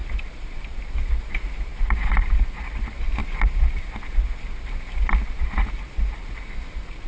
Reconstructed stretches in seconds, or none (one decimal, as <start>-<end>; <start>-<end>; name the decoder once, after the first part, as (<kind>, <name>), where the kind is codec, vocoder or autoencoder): 3.2-3.8 (vocoder, BigVGAN v2)